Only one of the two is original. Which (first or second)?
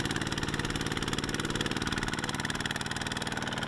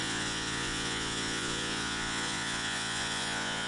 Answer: first